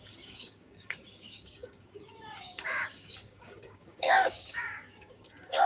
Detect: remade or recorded remade